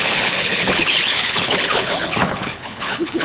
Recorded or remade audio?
remade